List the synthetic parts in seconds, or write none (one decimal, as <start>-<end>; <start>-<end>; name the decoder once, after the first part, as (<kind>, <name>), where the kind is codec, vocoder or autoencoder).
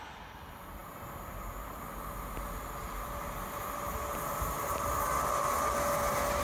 none